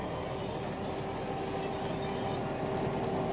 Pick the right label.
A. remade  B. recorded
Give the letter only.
B